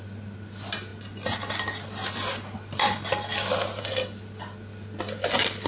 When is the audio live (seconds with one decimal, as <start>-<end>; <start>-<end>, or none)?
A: 0.0-5.7